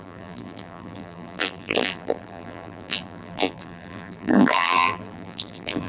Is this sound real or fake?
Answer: fake